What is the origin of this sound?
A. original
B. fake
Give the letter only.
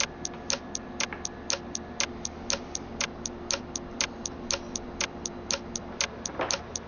A